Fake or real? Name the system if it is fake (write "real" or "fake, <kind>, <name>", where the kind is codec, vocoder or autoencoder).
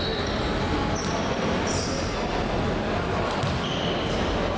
real